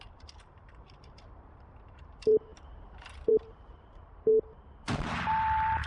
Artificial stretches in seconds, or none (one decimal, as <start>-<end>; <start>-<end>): 0.0-4.3; 4.8-5.9